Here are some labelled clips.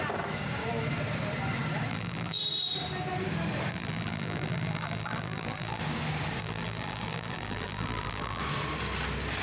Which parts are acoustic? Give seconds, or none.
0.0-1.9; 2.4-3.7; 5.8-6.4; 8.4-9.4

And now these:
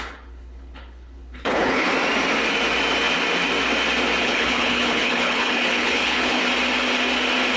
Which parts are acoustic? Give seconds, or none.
1.9-4.2; 6.4-7.6

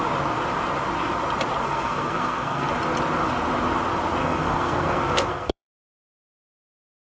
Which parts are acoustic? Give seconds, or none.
0.0-1.6; 2.7-4.2; 5.9-7.0

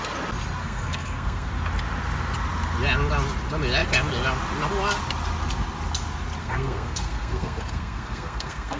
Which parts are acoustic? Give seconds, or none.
0.0-0.6; 1.5-6.4

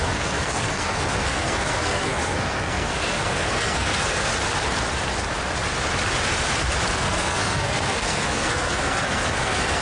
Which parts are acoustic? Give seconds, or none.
4.3-6.9

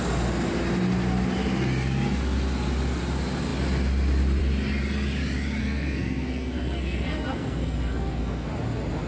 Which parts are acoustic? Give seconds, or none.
0.0-5.6; 8.5-9.1